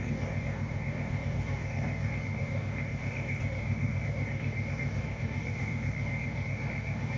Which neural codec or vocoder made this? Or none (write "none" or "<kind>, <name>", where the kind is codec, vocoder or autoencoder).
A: codec, DAC